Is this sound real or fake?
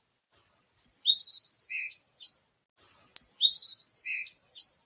real